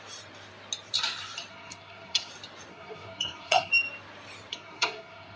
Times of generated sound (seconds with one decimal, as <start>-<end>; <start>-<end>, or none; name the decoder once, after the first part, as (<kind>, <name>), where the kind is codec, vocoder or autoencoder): 1.5-2.3 (codec, SNAC); 2.7-3.7; 4.5-5.4